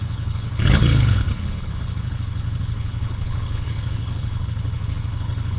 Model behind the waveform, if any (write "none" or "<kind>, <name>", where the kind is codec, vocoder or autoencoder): codec, HILCodec